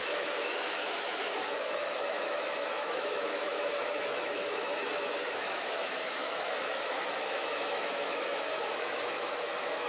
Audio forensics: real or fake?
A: fake